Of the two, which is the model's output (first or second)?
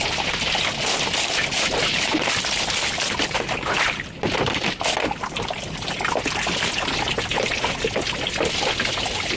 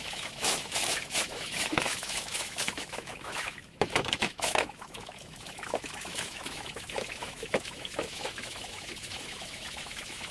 second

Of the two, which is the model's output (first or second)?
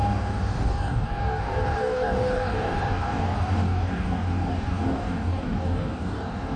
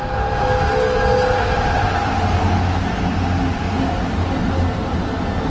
first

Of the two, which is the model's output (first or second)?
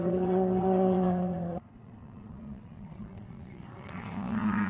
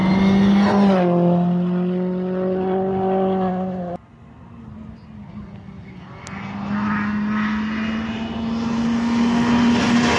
first